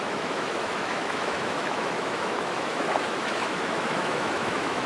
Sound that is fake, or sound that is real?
fake